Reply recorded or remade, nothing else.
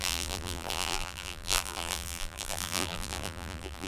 remade